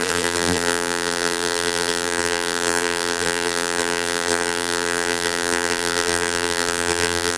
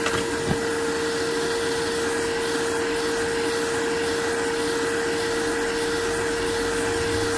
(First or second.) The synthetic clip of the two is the first